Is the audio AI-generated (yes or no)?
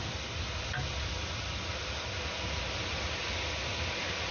no